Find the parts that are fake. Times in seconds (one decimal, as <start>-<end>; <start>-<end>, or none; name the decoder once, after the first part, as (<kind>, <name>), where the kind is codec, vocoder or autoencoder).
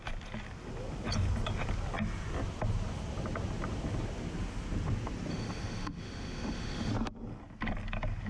5.3-6.9 (autoencoder, DAC-VAE)